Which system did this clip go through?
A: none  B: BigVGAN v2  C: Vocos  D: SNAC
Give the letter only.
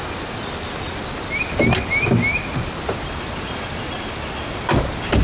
A